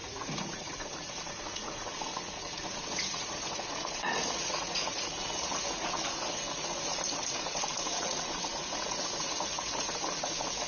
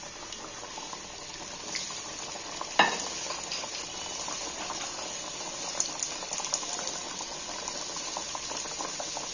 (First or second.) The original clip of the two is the second